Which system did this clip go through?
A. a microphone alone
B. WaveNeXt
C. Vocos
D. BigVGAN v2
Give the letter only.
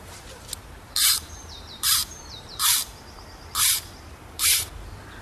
D